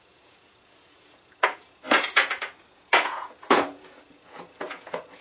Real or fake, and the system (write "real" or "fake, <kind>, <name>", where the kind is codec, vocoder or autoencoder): fake, vocoder, Vocos